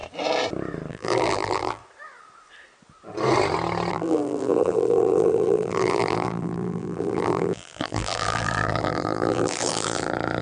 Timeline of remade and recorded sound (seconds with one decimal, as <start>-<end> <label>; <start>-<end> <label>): 0.0-0.9 recorded; 0.9-1.8 remade; 1.8-3.9 recorded; 3.9-10.4 remade